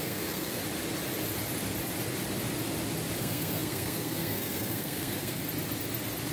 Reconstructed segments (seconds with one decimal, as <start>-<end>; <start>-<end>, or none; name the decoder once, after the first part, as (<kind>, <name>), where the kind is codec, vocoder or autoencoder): 0.0-0.6 (codec, SNAC); 3.2-5.4